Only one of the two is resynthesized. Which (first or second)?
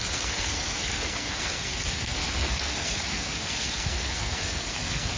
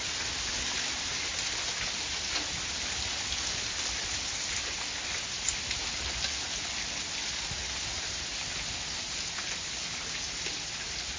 first